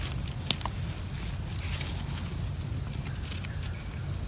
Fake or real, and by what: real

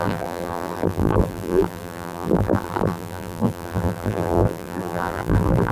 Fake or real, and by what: fake, vocoder, BigVGAN v2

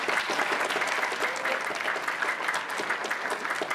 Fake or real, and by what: real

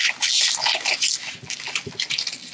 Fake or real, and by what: real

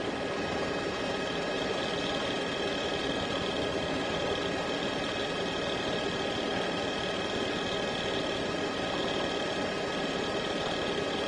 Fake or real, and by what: real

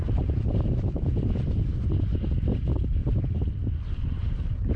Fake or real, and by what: fake, vocoder, BigVGAN v2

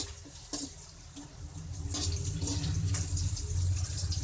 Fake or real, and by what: real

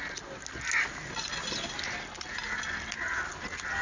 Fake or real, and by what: real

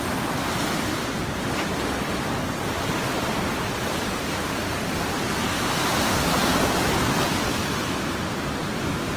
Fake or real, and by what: real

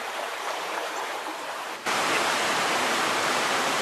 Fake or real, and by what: fake, vocoder, BigVGAN v2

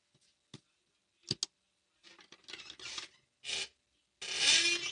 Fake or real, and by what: real